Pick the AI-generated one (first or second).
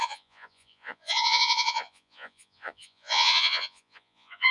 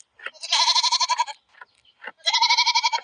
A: first